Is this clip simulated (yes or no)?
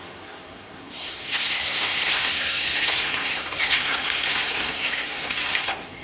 yes